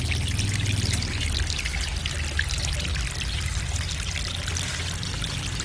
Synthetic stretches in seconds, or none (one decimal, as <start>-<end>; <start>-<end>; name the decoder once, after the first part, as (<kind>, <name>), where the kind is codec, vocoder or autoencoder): none